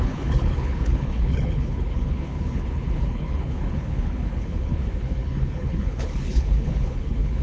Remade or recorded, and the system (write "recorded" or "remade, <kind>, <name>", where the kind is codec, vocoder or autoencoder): remade, codec, HILCodec